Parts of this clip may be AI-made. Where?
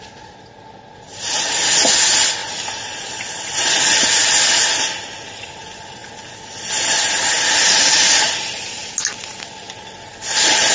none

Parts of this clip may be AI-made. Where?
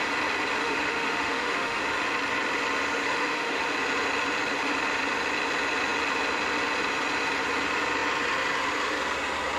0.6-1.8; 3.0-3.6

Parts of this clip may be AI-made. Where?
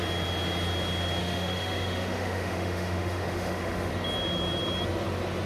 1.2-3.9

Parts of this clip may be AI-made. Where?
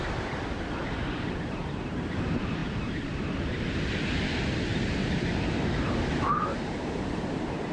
0.8-1.6; 2.6-3.7; 4.7-7.7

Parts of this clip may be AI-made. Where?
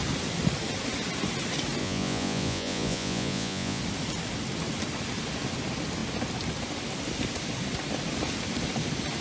1.8-3.8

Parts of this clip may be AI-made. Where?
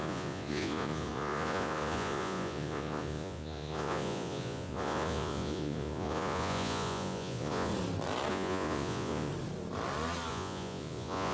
0.0-7.7; 8.3-9.3; 10.3-11.3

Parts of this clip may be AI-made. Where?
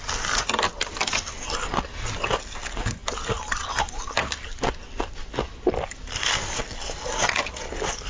none